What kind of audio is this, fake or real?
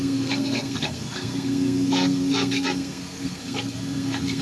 fake